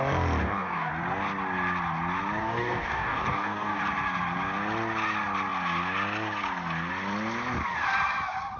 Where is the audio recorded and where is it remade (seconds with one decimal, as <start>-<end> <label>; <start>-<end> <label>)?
0.0-0.4 recorded; 0.4-0.9 remade; 0.9-2.4 recorded; 2.4-3.8 remade; 3.8-8.6 recorded